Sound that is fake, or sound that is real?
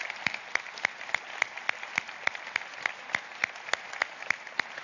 real